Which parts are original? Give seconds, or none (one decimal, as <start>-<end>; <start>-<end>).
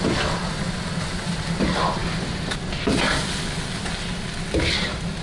0.0-5.2